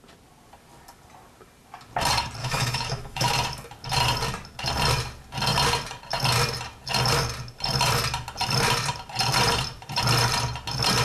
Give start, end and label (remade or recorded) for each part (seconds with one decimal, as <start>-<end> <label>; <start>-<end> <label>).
0.0-2.4 recorded; 2.4-3.3 remade; 3.3-11.0 recorded